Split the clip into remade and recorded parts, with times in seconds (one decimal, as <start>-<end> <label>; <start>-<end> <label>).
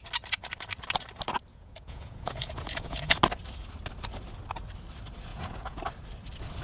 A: 0.0-1.5 recorded; 1.5-3.2 remade; 3.2-5.3 recorded; 5.3-5.8 remade; 5.8-6.6 recorded